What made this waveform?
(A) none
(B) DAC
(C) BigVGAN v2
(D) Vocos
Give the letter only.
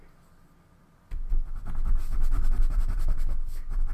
A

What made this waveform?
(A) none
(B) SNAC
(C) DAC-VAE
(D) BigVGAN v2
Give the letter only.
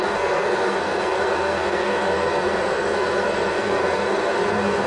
B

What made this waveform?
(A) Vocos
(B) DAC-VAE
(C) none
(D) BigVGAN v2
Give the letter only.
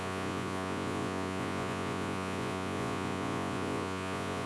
A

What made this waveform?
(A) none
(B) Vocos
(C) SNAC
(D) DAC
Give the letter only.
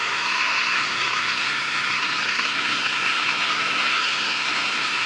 C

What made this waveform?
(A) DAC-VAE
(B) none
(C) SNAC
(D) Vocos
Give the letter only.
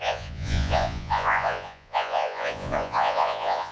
D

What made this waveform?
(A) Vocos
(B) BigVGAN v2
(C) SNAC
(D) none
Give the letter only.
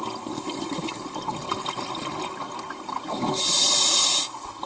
D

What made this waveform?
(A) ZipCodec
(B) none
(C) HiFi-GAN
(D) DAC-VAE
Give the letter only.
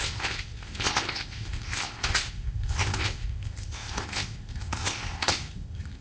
A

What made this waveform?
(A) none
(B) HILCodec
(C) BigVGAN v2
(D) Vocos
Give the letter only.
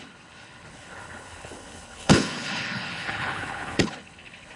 B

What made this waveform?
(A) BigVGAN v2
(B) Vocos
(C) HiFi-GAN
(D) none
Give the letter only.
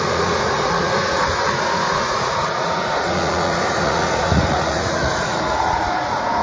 B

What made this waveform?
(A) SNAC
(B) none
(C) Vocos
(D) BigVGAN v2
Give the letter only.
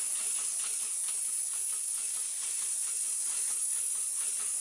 B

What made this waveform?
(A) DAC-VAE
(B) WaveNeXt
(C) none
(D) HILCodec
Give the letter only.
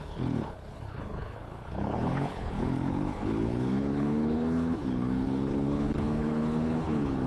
D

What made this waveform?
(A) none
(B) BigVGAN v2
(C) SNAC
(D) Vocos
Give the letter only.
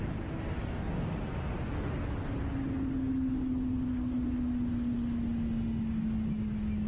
A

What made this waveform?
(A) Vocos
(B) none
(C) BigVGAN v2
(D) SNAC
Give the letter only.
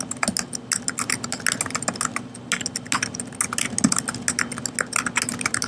B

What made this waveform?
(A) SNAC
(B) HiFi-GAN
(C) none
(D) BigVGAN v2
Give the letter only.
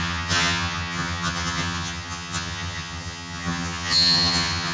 B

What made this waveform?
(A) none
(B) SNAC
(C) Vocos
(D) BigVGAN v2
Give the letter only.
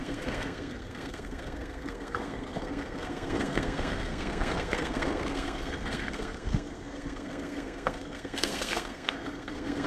B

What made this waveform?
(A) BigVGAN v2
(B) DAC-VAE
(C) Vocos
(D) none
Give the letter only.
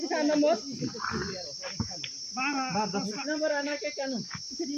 D